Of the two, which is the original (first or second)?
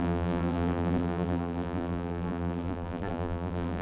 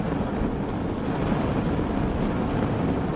second